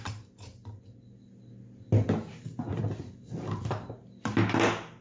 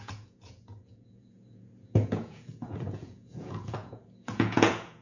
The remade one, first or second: second